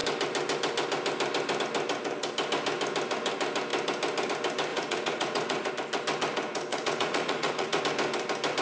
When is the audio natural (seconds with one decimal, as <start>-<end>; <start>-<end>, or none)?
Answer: 0.0-4.7; 5.7-6.7; 7.8-8.6